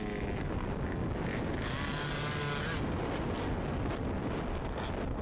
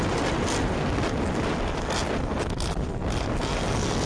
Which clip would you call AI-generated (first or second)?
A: second